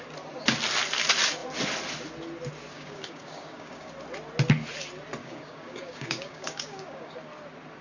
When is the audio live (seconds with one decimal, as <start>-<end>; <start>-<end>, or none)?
0.0-2.7; 3.9-5.2; 7.1-7.8